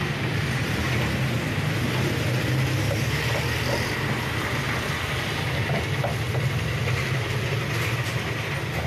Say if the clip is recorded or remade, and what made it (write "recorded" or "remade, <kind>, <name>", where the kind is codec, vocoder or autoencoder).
recorded